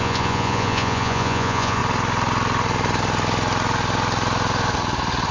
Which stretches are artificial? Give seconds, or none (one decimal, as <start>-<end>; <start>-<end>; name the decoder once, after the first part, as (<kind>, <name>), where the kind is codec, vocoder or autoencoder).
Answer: 0.0-1.8 (vocoder, Vocos)